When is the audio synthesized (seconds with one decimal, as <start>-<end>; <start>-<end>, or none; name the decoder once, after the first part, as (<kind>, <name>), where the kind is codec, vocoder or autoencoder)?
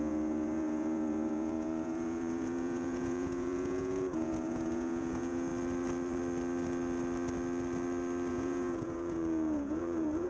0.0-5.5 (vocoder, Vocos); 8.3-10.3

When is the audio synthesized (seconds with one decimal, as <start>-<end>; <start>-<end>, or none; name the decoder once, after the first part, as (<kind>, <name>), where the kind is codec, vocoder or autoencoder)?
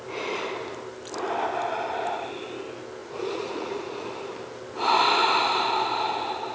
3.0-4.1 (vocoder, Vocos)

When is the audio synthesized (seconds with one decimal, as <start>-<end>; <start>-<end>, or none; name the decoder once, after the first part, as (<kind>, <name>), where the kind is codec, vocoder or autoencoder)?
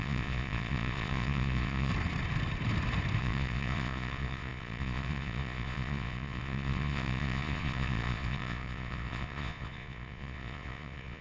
0.0-1.9 (vocoder, Vocos); 3.2-11.2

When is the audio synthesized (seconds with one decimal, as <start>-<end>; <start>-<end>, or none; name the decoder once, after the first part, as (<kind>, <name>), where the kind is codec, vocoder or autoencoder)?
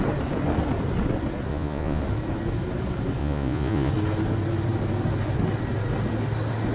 1.5-2.0 (vocoder, Vocos); 3.2-3.9